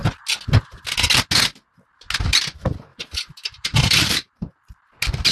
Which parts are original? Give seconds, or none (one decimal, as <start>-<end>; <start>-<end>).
0.0-2.9; 4.7-5.3